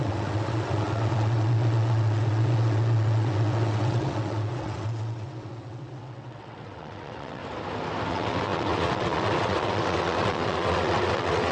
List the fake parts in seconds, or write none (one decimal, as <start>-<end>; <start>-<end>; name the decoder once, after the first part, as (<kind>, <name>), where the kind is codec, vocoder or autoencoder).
0.0-7.4 (vocoder, WaveNeXt); 8.1-11.5